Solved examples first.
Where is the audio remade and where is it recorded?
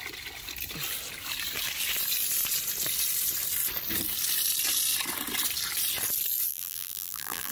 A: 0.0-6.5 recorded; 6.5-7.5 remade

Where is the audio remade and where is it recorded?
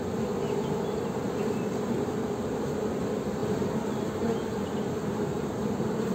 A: 0.0-3.4 recorded; 3.4-4.3 remade; 4.3-6.1 recorded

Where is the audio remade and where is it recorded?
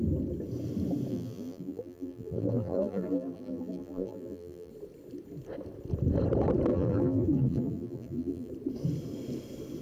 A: 0.0-1.1 recorded; 1.1-4.7 remade; 4.7-6.7 recorded; 6.7-8.5 remade; 8.5-9.8 recorded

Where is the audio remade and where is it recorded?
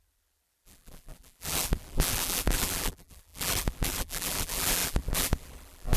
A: 0.0-6.0 remade